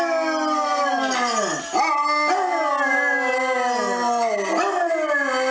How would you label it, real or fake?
real